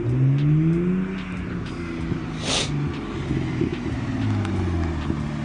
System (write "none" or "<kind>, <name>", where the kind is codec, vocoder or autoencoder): none